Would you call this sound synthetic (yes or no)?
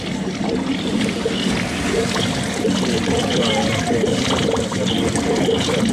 no